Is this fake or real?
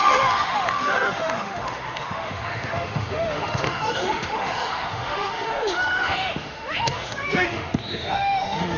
fake